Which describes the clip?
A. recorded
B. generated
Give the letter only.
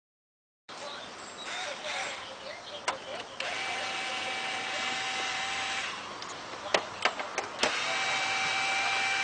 A